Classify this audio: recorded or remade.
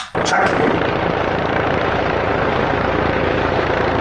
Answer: remade